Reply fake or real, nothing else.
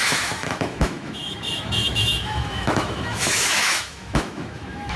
fake